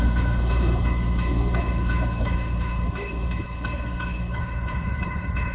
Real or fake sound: fake